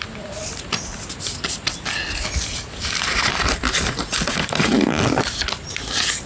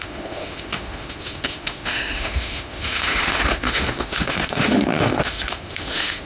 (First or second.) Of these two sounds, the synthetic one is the second